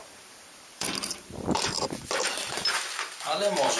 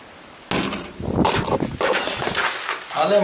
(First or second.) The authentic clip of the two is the second